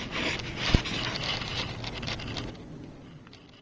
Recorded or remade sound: recorded